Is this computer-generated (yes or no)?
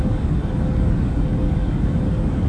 yes